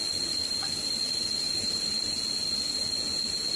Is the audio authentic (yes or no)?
yes